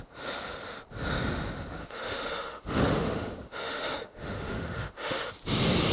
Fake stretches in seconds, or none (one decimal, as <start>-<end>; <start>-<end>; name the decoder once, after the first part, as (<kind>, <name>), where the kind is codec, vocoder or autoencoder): 1.8-5.3 (autoencoder, DAC-VAE)